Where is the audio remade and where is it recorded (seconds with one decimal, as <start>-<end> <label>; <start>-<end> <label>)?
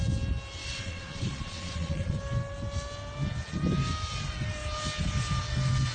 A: 0.0-0.6 recorded; 0.6-2.2 remade; 2.2-5.9 recorded